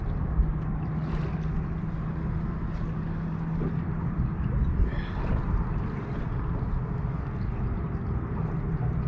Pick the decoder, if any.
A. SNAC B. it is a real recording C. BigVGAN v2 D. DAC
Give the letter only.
B